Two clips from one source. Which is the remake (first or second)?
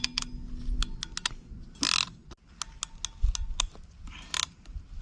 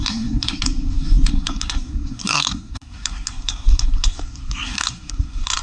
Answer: second